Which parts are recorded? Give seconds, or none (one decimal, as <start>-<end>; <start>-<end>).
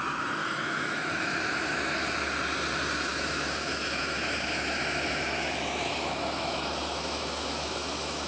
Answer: 0.0-0.4; 1.9-3.1